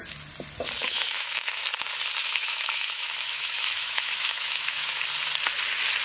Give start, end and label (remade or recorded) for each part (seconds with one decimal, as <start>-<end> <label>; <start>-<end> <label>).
0.0-0.8 recorded; 0.8-1.6 remade; 1.6-2.2 recorded; 2.2-5.0 remade; 5.0-6.0 recorded